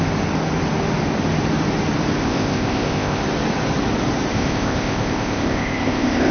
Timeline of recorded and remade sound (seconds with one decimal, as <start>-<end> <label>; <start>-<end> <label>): 0.0-2.2 recorded; 2.2-3.2 remade; 3.2-4.3 recorded; 4.3-6.3 remade